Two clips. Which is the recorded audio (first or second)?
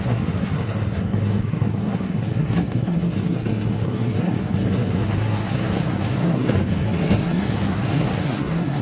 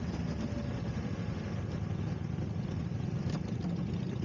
second